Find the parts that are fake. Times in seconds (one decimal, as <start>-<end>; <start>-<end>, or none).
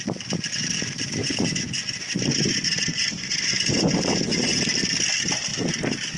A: 1.2-4.6